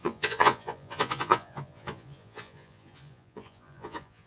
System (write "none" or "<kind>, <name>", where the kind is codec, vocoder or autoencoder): vocoder, Vocos